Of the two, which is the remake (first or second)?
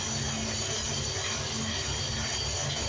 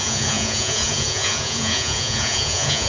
second